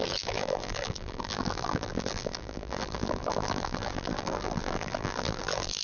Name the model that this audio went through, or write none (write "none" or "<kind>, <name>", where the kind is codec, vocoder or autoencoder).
vocoder, BigVGAN v2